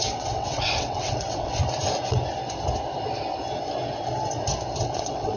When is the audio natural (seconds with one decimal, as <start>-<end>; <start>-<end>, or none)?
1.6-4.8